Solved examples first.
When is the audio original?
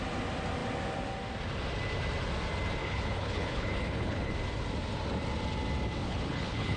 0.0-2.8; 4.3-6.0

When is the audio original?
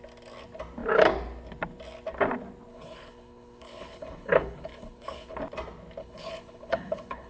0.0-2.7; 5.4-6.0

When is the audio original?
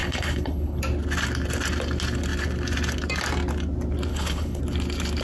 0.8-4.1; 4.6-5.2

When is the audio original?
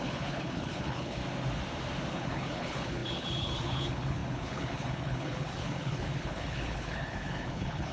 1.2-2.1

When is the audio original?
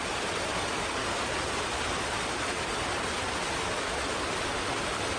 0.0-5.2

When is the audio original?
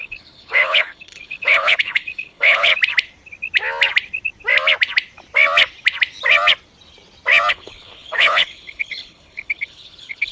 2.7-7.5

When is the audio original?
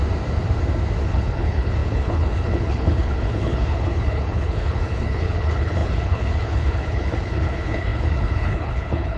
0.0-1.0